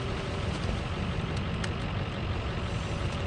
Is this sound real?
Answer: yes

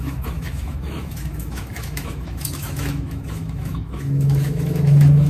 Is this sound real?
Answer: no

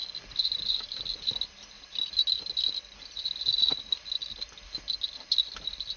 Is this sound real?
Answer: yes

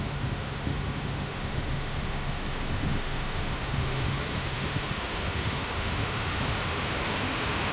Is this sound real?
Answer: no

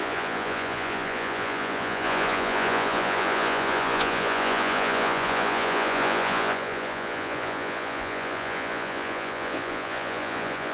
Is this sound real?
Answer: no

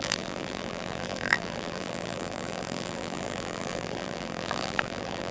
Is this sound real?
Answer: no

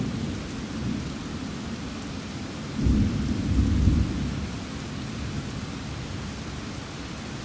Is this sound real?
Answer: yes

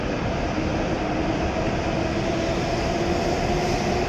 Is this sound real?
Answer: yes